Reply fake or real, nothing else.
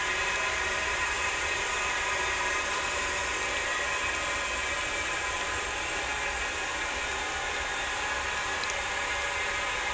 real